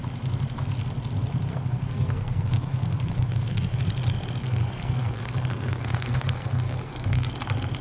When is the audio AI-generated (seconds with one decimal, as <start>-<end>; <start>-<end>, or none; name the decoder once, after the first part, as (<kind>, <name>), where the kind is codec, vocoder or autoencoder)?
1.5-3.8 (codec, SNAC); 4.4-7.3